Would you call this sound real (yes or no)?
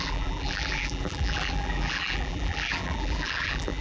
no